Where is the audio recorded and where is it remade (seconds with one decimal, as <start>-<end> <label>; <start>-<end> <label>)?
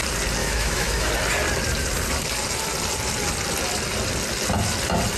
0.0-0.4 recorded; 0.4-1.1 remade; 1.1-5.2 recorded